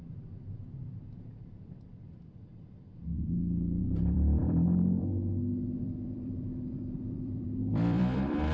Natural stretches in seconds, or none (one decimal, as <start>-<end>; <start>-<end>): 0.0-1.7